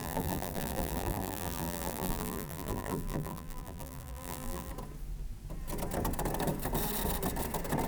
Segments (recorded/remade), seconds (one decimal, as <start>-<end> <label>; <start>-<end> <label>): 0.0-4.7 remade; 4.7-7.9 recorded